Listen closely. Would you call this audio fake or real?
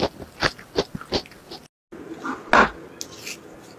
real